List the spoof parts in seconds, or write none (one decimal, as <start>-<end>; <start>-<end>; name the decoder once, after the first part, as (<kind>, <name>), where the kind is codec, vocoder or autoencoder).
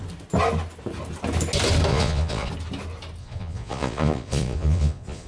1.9-2.5 (vocoder, Vocos); 3.2-5.3